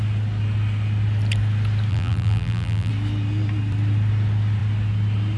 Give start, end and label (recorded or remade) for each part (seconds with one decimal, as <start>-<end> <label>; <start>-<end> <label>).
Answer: 0.0-1.9 recorded; 1.9-2.9 remade; 2.9-5.4 recorded

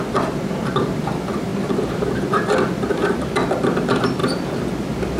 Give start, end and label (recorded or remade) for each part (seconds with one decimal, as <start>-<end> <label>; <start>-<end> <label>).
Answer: 0.0-4.2 remade; 4.2-5.2 recorded

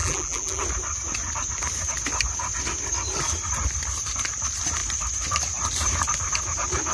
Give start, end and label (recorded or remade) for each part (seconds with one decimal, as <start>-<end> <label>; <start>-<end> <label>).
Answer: 0.0-0.6 remade; 0.6-6.9 recorded

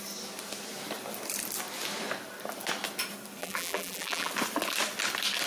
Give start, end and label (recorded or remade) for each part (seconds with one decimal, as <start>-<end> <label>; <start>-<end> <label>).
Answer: 0.0-3.4 recorded; 3.4-4.3 remade; 4.3-5.5 recorded

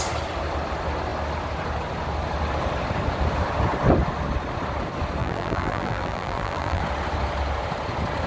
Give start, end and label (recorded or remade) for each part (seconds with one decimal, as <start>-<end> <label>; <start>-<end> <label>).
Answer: 0.0-5.2 recorded; 5.2-6.8 remade; 6.8-8.3 recorded

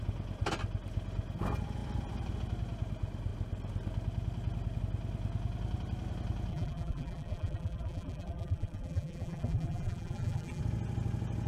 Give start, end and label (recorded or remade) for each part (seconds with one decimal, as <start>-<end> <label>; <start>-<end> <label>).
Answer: 0.0-6.5 recorded; 6.5-10.6 remade; 10.6-11.5 recorded

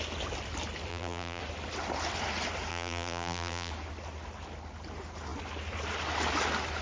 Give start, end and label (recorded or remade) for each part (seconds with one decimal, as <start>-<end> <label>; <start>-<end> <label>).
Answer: 0.0-0.9 recorded; 0.9-1.4 remade; 1.4-2.7 recorded; 2.7-3.7 remade; 3.7-6.8 recorded

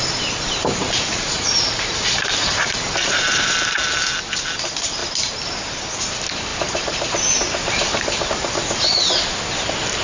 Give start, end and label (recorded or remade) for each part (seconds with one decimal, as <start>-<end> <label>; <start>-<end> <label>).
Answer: 0.0-0.6 recorded; 0.6-3.5 remade; 3.5-5.0 recorded; 5.0-5.8 remade; 5.8-6.5 recorded; 6.5-8.3 remade; 8.3-10.0 recorded